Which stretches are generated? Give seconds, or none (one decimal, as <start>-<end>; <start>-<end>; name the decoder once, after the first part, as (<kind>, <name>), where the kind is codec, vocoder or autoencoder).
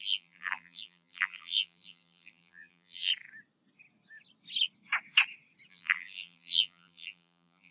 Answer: 0.0-3.1 (vocoder, BigVGAN v2); 5.7-7.7